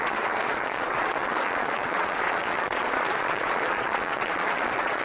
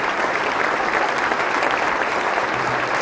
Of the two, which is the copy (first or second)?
first